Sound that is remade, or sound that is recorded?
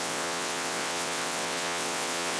remade